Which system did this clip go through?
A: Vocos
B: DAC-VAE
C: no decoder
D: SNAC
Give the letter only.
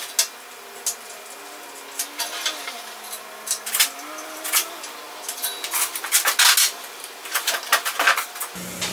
C